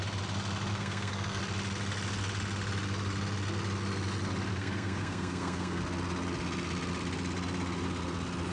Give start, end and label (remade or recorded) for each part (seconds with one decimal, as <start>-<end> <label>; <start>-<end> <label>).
0.0-0.7 recorded; 0.7-1.4 remade; 1.4-4.5 recorded; 4.5-5.8 remade; 5.8-8.5 recorded